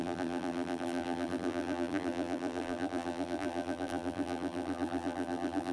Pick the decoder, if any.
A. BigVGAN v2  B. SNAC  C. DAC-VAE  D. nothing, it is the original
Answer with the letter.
A